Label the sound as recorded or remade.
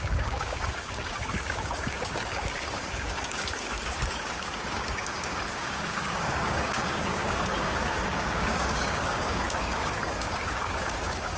remade